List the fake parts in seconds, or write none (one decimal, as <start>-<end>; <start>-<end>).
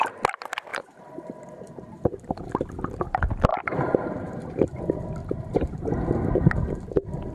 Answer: 0.7-1.3; 3.5-4.8; 5.2-5.9